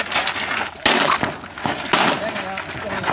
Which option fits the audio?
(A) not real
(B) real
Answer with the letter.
B